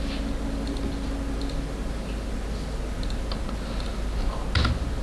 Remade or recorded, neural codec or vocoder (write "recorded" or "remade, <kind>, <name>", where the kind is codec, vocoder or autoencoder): recorded